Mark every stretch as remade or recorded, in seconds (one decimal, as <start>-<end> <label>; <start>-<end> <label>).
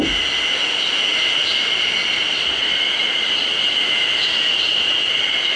0.0-1.1 recorded; 1.1-4.5 remade; 4.5-5.6 recorded